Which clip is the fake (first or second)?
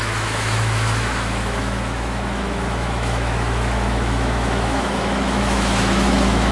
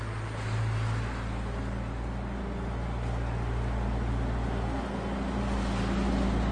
first